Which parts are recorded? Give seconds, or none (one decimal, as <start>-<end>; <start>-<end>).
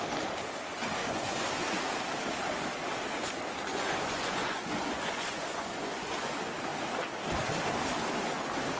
0.0-1.0; 1.5-3.7; 6.3-8.8